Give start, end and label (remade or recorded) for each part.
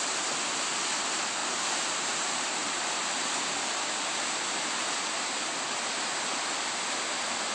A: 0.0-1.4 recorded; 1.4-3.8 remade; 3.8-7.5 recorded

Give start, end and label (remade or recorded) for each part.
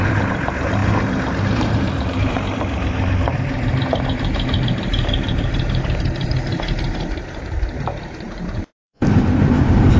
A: 0.0-10.0 remade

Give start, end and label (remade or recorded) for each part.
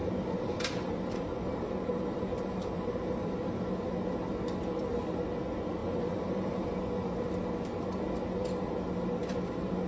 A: 0.0-3.6 remade; 3.6-5.8 recorded; 5.8-6.8 remade; 6.8-9.2 recorded; 9.2-9.9 remade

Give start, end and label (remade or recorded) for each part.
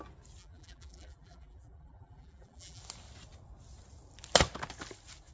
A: 0.0-0.4 recorded; 0.4-2.8 remade; 2.8-5.3 recorded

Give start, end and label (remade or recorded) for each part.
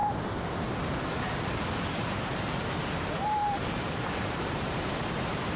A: 0.0-5.6 remade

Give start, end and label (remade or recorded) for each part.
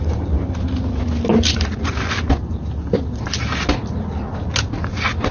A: 0.0-1.3 recorded; 1.3-4.5 remade; 4.5-5.3 recorded